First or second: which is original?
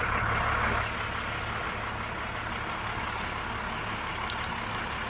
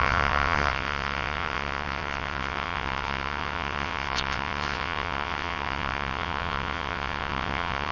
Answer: first